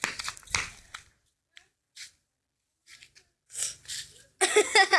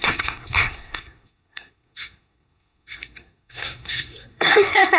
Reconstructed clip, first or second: second